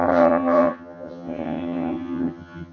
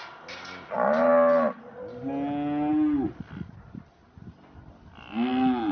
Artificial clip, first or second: first